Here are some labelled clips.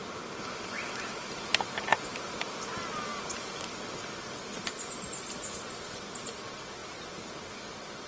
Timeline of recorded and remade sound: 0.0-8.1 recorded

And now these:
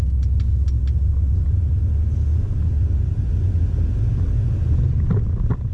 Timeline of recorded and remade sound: 0.0-5.7 recorded

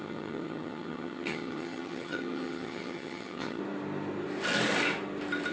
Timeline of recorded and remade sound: 0.0-3.6 remade; 3.6-5.5 recorded

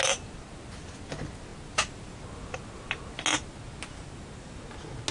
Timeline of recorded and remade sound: 0.0-5.1 recorded

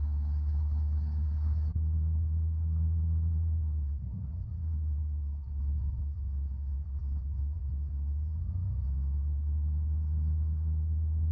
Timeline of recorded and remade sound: 0.0-11.3 remade

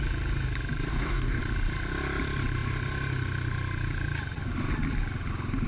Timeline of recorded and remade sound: 0.0-0.9 recorded; 0.9-1.4 remade; 1.4-5.7 recorded

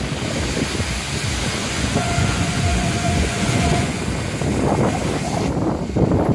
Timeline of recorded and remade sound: 0.0-1.6 recorded; 1.6-4.0 remade; 4.0-6.3 recorded